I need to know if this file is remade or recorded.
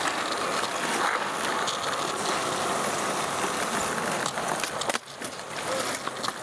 recorded